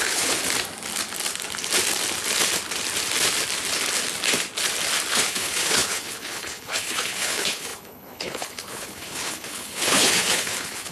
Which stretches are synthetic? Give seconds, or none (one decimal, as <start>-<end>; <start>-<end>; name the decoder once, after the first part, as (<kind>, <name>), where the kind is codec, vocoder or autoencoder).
0.0-0.4 (codec, HILCodec); 5.1-10.9